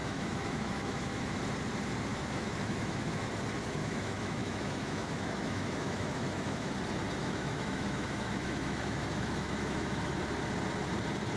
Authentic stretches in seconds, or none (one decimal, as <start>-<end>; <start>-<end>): 1.4-2.1; 3.3-3.8; 6.7-7.2; 10.2-11.4

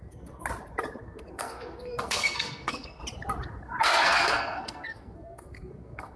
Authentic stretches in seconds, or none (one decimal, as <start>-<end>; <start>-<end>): 0.4-1.0; 3.0-3.8

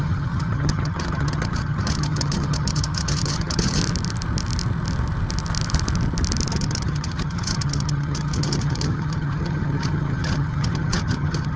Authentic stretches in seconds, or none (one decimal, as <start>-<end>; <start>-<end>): 3.8-6.5

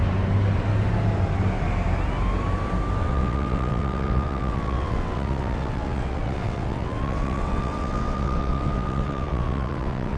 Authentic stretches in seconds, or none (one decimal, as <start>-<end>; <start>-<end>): 0.0-3.0